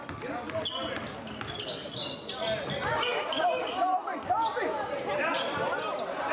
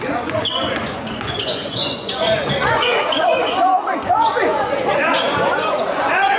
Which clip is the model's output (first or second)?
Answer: second